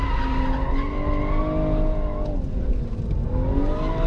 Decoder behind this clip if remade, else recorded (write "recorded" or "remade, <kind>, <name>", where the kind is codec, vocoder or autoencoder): recorded